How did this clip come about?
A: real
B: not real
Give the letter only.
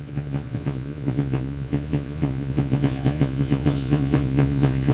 B